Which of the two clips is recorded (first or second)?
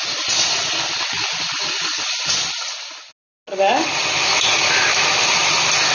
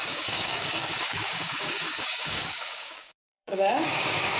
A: first